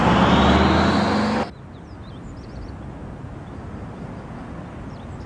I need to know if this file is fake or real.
real